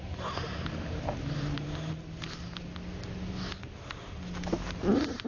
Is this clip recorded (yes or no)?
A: yes